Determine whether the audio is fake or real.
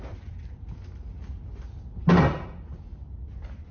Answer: real